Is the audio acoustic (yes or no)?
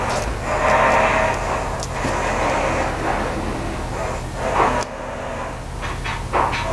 yes